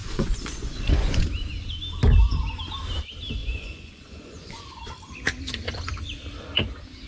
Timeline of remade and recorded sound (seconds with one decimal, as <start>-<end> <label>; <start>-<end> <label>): 0.0-1.2 remade; 1.2-3.4 recorded; 3.4-4.8 remade; 4.8-7.1 recorded